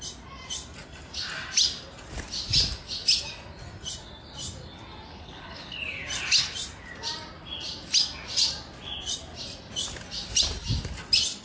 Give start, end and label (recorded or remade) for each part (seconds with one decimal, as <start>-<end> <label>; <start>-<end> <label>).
0.0-5.1 recorded; 5.1-5.8 remade; 5.8-11.4 recorded